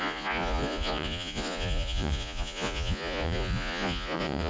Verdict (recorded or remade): remade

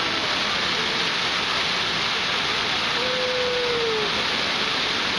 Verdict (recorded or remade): recorded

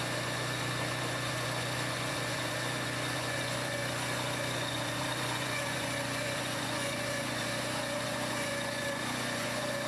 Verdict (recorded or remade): remade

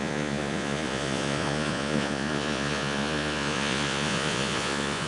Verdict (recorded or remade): remade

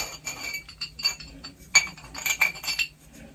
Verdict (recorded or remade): recorded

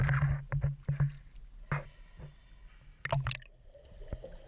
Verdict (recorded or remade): recorded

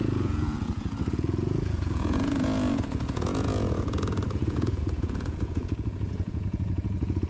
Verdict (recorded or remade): remade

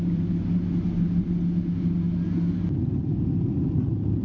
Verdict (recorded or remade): recorded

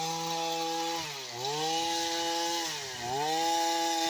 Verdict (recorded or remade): recorded